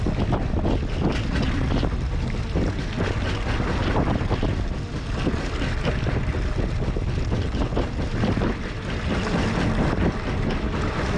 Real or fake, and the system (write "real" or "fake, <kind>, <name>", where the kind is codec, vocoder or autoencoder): real